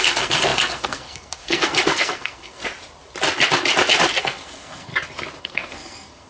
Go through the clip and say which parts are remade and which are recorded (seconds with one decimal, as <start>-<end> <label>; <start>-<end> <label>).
0.0-2.6 remade; 2.6-4.2 recorded; 4.2-4.9 remade; 4.9-5.4 recorded; 5.4-6.3 remade